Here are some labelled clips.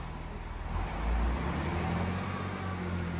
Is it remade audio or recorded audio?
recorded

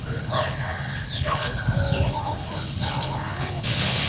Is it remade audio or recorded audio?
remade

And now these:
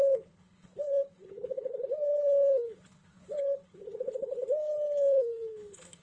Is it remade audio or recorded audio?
remade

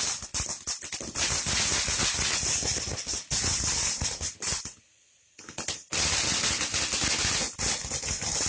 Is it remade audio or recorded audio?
recorded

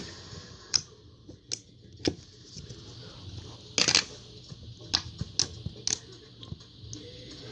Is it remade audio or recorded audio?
recorded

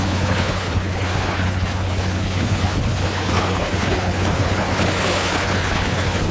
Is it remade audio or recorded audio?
remade